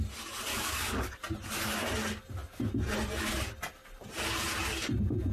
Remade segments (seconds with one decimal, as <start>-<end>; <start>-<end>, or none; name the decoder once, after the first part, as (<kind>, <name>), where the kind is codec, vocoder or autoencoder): 0.5-1.2 (codec, DAC)